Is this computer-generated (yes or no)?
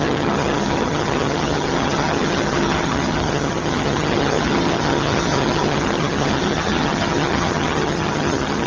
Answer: yes